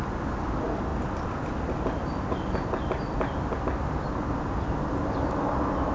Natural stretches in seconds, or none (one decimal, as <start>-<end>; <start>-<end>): 0.0-5.9